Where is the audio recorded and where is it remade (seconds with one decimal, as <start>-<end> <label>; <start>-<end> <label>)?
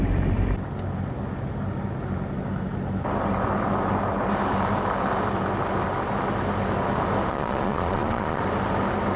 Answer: 0.0-7.3 recorded; 7.3-8.4 remade; 8.4-9.2 recorded